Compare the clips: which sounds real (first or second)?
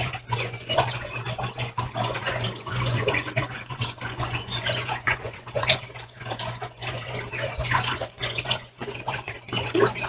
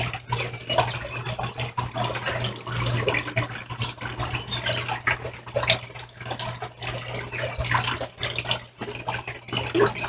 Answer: second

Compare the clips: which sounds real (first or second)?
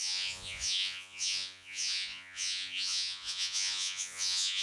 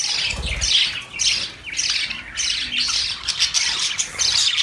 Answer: second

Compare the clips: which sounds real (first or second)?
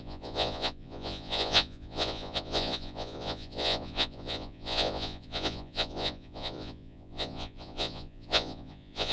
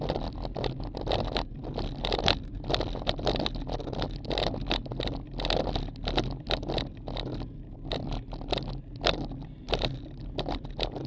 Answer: second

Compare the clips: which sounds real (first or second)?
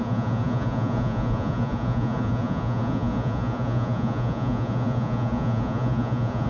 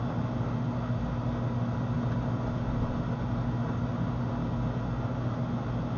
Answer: second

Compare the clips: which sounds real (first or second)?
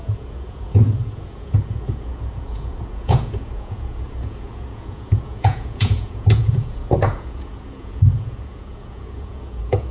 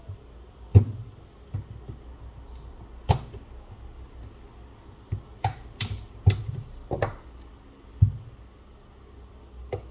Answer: second